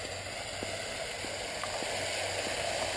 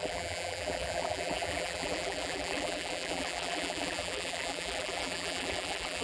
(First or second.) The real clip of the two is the first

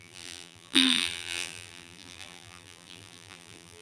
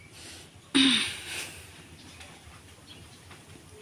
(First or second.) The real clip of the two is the second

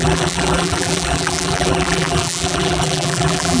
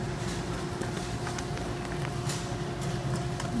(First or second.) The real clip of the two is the second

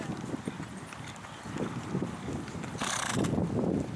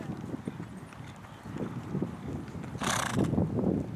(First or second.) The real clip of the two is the second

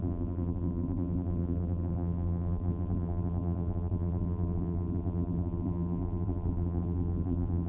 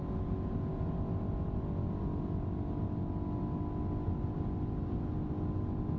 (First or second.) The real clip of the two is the second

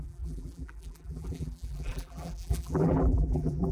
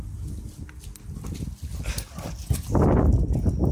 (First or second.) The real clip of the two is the second